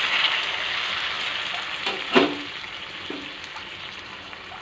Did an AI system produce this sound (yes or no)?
no